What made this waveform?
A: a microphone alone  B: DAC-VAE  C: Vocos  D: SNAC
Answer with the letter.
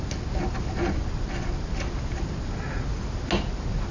A